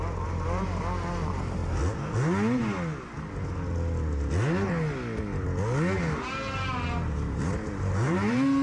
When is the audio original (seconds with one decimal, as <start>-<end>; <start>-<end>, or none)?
1.6-6.0